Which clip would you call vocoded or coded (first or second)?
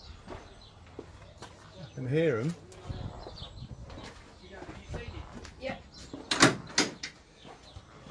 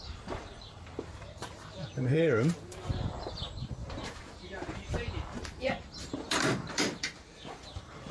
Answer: second